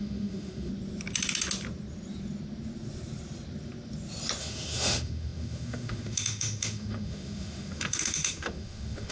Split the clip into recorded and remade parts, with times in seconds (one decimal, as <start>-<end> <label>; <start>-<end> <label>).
0.0-0.7 remade; 0.7-4.4 recorded; 4.4-9.1 remade